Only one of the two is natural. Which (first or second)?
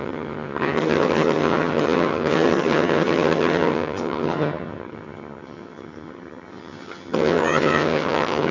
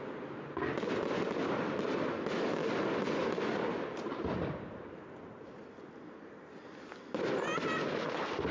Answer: second